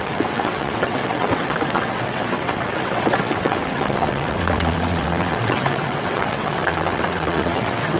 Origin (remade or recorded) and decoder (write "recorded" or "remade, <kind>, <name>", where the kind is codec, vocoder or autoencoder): remade, vocoder, WaveNeXt